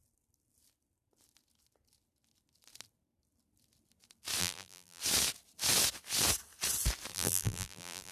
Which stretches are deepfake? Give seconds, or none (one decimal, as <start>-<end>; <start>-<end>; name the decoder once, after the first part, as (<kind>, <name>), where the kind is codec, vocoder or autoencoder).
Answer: 4.4-5.0 (vocoder, BigVGAN v2); 7.1-8.1